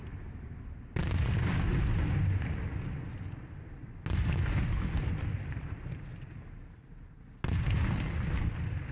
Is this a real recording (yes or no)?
yes